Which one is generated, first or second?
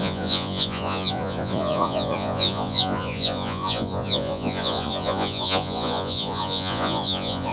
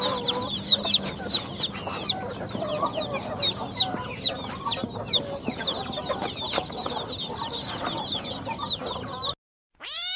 first